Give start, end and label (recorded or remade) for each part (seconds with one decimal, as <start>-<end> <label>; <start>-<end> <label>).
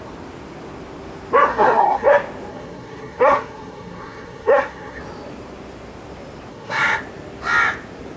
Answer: 0.0-1.5 recorded; 1.5-2.1 remade; 2.1-2.5 recorded; 2.5-5.0 remade; 5.0-6.5 recorded; 6.5-7.0 remade; 7.0-8.2 recorded